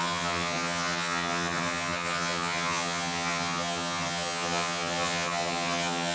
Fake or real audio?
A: fake